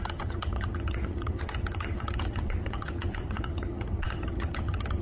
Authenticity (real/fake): fake